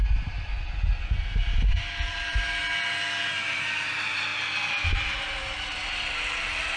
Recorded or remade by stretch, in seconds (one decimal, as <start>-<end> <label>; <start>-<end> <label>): 0.0-1.7 recorded; 1.7-2.6 remade; 2.6-3.2 recorded; 3.2-4.3 remade; 4.3-5.4 recorded; 5.4-6.8 remade